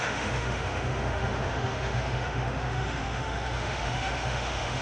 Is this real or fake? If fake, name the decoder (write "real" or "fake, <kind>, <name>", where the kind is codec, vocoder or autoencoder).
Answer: fake, autoencoder, DAC-VAE